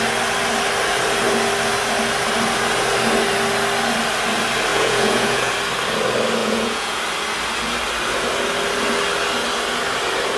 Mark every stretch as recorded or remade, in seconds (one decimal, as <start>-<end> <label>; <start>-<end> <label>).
0.0-4.7 recorded; 4.7-5.5 remade; 5.5-6.4 recorded; 6.4-7.0 remade; 7.0-10.4 recorded